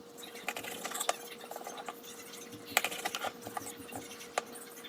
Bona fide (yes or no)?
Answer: yes